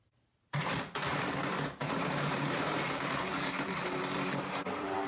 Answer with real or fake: fake